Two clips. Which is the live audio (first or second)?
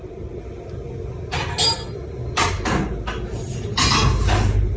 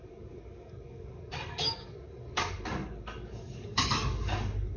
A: first